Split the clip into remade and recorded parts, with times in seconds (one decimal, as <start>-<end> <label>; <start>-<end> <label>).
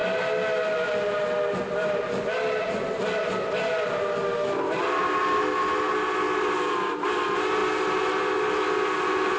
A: 0.0-5.5 recorded; 5.5-6.9 remade; 6.9-9.4 recorded